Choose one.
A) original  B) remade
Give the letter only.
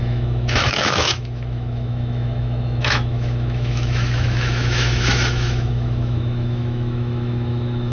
B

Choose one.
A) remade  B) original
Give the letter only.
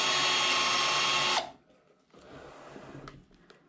B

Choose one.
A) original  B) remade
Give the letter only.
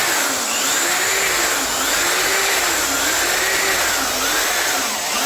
A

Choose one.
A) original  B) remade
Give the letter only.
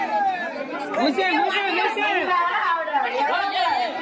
A